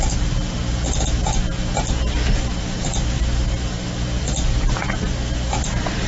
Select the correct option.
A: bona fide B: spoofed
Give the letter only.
A